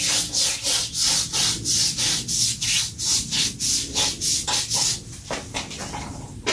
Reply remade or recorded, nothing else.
recorded